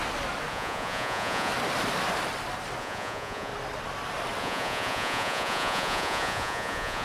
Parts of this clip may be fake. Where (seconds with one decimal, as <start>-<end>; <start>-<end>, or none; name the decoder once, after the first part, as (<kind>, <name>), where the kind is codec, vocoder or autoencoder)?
0.5-1.5 (vocoder, Vocos); 2.8-3.5; 4.4-7.0

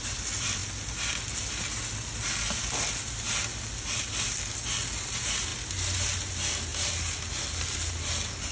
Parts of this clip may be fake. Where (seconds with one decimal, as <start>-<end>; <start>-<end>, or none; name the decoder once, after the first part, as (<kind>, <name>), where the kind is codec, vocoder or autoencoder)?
none

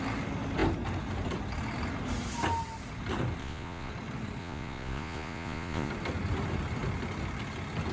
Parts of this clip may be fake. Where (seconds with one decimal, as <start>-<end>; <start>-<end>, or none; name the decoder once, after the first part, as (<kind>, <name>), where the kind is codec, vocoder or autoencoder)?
3.4-3.9 (vocoder, Vocos); 4.4-5.9

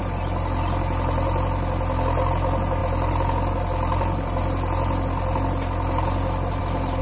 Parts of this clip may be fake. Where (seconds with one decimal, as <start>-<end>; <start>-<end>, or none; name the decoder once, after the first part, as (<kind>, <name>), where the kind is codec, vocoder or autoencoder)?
none

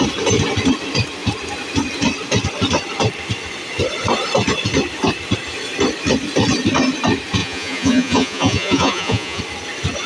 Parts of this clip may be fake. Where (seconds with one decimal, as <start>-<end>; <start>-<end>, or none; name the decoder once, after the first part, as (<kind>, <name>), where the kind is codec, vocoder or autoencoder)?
7.4-9.4 (vocoder, Vocos)

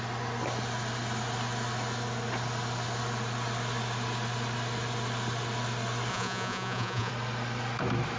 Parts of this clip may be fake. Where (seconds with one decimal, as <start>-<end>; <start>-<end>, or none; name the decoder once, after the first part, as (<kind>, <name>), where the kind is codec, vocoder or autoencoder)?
6.1-7.1 (vocoder, Vocos)

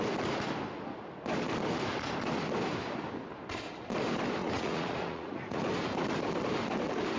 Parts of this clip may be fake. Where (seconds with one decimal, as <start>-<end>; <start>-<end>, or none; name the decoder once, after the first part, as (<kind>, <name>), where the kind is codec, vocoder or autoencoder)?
4.4-5.6 (vocoder, Vocos)

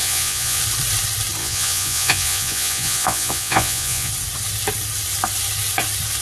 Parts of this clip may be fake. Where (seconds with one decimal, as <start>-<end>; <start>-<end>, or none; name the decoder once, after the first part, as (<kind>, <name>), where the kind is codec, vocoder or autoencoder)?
0.0-0.6 (vocoder, Vocos); 1.4-4.1